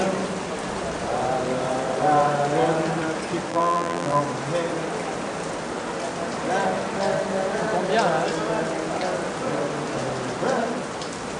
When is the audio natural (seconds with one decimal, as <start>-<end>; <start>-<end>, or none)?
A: 0.0-3.5; 4.2-11.4